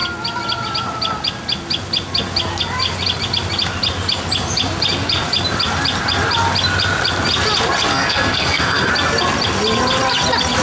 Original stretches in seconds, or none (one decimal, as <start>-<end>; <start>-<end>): 0.0-7.9; 8.9-10.6